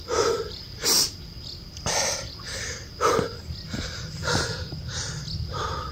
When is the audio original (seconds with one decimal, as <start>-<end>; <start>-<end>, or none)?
2.9-3.5